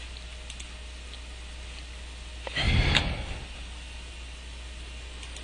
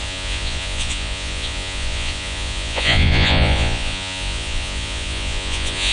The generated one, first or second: second